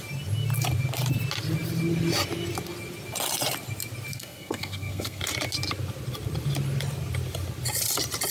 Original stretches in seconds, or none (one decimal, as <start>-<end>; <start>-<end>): 0.0-4.1; 5.2-8.3